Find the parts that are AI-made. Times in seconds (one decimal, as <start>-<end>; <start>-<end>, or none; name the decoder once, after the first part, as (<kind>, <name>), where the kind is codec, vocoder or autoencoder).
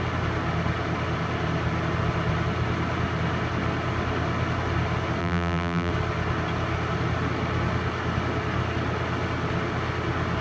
5.2-5.9 (vocoder, BigVGAN v2)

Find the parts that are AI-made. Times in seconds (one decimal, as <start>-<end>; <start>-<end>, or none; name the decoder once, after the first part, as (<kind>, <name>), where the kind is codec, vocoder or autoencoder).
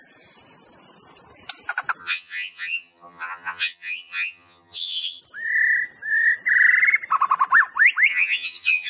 2.0-5.2 (vocoder, HiFi-GAN); 8.1-8.9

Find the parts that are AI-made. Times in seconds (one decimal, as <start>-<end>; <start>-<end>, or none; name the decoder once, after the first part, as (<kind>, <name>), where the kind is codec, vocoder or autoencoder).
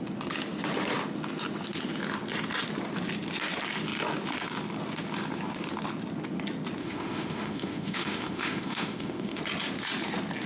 6.8-9.4 (autoencoder, DAC-VAE)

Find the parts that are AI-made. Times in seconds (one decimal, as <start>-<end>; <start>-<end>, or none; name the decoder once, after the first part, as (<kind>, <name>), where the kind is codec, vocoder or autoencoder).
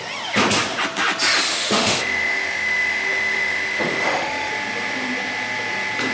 1.5-4.5 (autoencoder, DAC-VAE)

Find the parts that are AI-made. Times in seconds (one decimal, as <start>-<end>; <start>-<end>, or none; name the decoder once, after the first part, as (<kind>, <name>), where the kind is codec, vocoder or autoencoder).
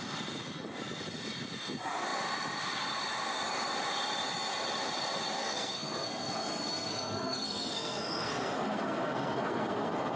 5.4-10.2 (codec, SNAC)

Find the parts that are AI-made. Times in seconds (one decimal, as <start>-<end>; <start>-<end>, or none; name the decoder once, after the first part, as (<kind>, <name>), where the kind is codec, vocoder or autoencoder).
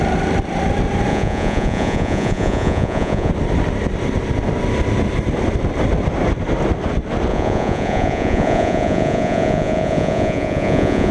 1.1-3.3 (vocoder, Vocos); 7.3-11.1